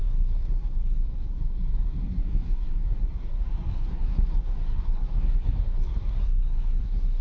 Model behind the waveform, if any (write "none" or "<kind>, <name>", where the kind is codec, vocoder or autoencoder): codec, SNAC